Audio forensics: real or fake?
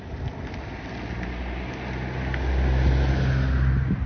real